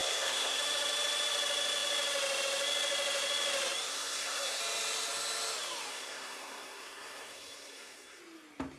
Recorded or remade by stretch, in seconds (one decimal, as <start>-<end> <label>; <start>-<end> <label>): 0.0-0.6 remade; 0.6-3.9 recorded; 3.9-4.6 remade; 4.6-5.9 recorded; 5.9-8.2 remade; 8.2-8.8 recorded